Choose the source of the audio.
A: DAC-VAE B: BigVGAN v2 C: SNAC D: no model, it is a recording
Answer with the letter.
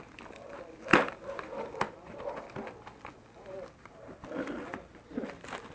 B